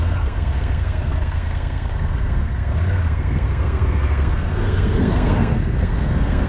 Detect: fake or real fake